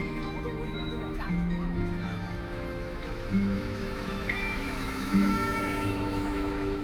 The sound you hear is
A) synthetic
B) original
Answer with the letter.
A